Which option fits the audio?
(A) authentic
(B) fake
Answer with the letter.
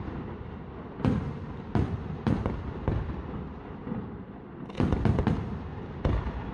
A